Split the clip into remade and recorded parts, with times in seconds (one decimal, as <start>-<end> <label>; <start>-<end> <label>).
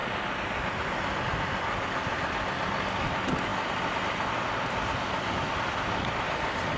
0.0-6.8 recorded